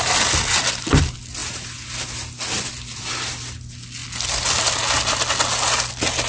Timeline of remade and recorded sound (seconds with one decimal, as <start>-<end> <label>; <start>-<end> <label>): 0.0-6.3 recorded